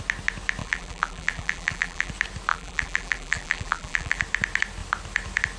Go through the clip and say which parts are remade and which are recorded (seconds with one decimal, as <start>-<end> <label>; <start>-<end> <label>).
0.0-0.6 recorded; 0.6-2.1 remade; 2.1-2.5 recorded; 2.5-4.2 remade; 4.2-5.6 recorded